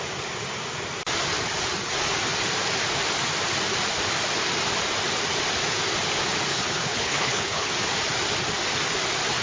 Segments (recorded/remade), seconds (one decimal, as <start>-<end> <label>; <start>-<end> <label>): 0.0-6.5 recorded; 6.5-7.7 remade; 7.7-9.4 recorded